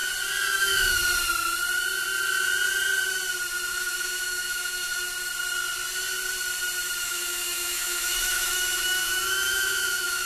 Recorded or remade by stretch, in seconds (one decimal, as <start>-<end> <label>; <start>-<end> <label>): 0.0-0.6 recorded; 0.6-1.0 remade; 1.0-3.7 recorded; 3.7-4.9 remade; 4.9-7.0 recorded; 7.0-10.3 remade